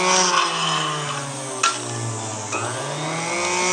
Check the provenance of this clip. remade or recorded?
recorded